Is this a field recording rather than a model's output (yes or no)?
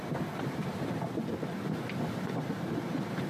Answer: no